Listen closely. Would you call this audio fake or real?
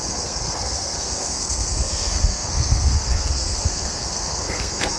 fake